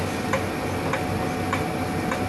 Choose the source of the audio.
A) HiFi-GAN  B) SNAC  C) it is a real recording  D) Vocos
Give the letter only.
C